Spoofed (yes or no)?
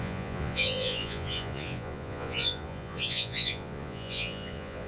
yes